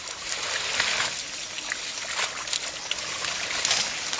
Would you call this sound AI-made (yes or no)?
no